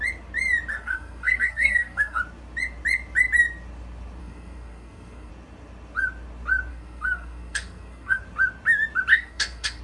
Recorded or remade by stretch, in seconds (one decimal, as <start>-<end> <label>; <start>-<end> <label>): 0.0-0.7 recorded; 0.7-2.2 remade; 2.2-4.2 recorded; 4.2-5.3 remade; 5.3-6.7 recorded; 6.7-8.2 remade; 8.2-9.1 recorded; 9.1-9.8 remade